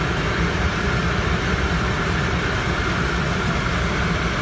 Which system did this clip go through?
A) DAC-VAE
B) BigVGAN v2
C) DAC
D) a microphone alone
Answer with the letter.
B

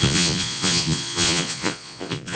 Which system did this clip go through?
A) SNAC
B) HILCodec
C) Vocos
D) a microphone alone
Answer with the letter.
C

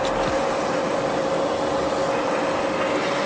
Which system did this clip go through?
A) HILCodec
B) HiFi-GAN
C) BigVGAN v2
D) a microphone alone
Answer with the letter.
D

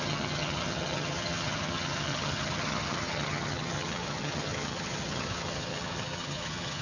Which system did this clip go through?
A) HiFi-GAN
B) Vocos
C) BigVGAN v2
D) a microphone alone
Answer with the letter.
A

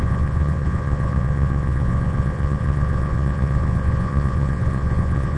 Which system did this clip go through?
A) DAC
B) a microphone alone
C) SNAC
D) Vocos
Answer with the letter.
D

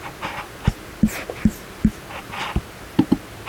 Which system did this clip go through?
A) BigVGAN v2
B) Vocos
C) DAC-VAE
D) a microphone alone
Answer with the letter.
D